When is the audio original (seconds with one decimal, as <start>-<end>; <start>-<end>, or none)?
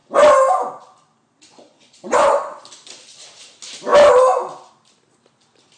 0.0-1.5; 2.6-5.8